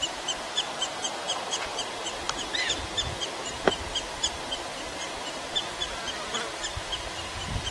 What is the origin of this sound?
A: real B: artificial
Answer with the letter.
A